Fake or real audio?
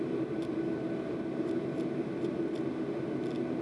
real